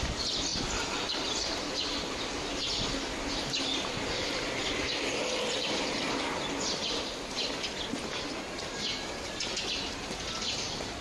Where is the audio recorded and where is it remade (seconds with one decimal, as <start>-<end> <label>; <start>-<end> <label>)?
0.0-11.0 recorded